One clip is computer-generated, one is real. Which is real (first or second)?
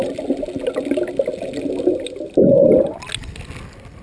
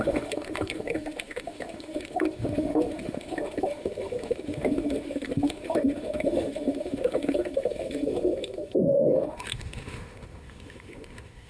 first